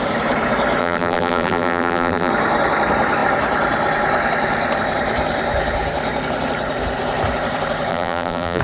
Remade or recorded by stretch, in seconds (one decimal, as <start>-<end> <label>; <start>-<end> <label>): 0.0-0.8 recorded; 0.8-2.3 remade; 2.3-7.9 recorded; 7.9-8.6 remade